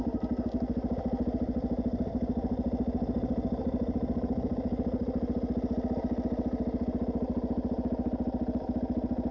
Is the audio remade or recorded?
recorded